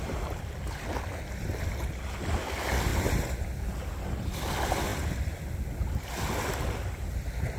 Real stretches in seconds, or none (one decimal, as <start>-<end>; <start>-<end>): 0.0-2.9; 4.3-7.6